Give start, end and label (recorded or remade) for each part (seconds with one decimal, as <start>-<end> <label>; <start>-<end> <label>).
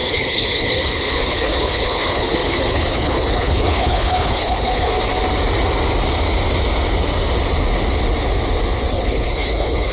0.0-4.9 remade; 4.9-8.9 recorded; 8.9-9.9 remade